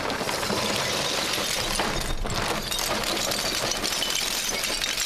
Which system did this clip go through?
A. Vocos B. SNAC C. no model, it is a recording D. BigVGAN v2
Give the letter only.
C